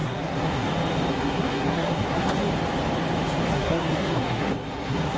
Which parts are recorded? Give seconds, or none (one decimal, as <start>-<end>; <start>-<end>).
0.7-1.1; 2.5-3.5